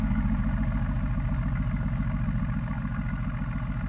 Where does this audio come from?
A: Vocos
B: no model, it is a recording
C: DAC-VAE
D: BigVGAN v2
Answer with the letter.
B